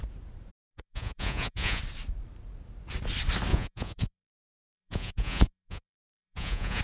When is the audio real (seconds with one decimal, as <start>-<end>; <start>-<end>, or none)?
0.0-0.5; 1.8-3.5